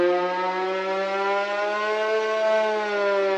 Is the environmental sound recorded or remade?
recorded